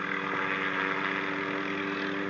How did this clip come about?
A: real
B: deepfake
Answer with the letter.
A